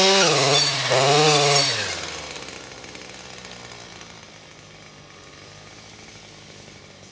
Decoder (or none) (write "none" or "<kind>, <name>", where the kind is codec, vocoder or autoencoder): none